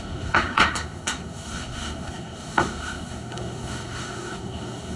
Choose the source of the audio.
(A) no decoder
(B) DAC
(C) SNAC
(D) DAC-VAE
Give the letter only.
C